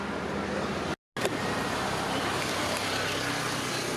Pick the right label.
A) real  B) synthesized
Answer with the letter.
A